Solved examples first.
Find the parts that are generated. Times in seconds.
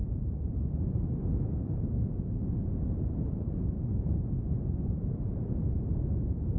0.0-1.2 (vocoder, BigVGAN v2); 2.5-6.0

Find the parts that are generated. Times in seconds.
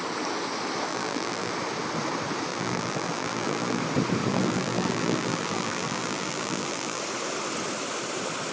0.9-1.5 (vocoder, BigVGAN v2); 2.5-3.8; 4.3-7.0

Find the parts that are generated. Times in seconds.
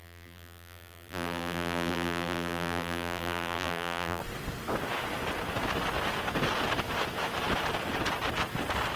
0.0-4.2 (vocoder, BigVGAN v2)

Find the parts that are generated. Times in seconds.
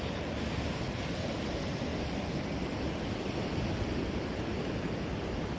none